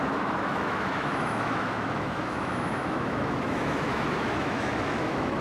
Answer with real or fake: fake